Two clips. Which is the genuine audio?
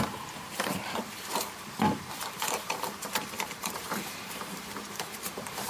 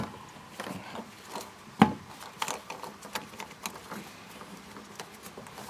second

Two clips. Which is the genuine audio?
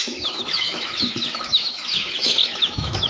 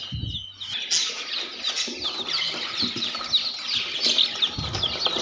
second